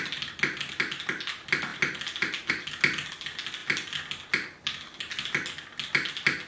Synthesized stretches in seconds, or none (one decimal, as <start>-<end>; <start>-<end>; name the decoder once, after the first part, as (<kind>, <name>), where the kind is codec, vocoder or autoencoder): none